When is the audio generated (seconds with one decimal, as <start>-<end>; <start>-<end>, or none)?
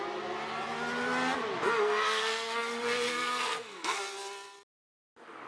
1.6-4.0